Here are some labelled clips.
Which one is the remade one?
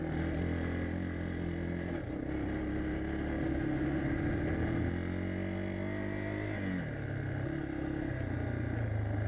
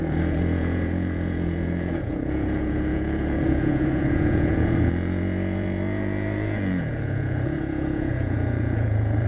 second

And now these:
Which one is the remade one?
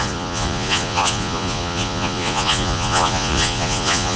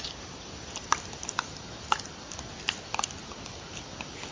first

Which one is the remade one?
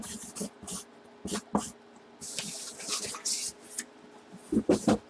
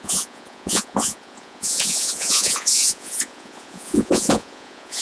second